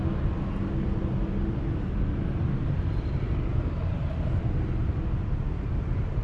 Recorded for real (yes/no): yes